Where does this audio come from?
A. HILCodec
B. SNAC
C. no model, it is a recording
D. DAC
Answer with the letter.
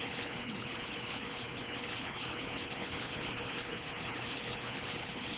A